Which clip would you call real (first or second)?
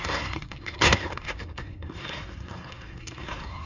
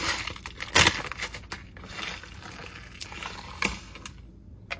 second